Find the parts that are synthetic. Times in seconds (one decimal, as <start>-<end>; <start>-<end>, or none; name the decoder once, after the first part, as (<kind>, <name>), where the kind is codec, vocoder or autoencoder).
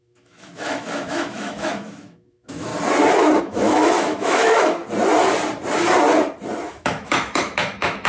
0.0-2.7 (autoencoder, DAC-VAE); 3.4-4.8; 6.7-8.1